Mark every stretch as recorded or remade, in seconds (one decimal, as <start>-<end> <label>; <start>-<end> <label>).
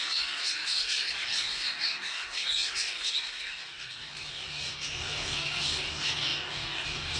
0.0-7.2 remade